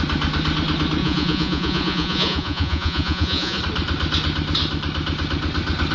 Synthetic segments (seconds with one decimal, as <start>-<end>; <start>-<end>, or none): 1.0-3.6